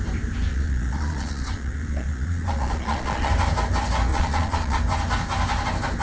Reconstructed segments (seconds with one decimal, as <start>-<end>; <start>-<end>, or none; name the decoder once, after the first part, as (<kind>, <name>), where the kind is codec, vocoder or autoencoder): 0.5-3.3 (vocoder, Vocos); 4.1-4.8